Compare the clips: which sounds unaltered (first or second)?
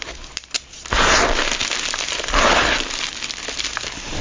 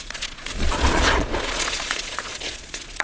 first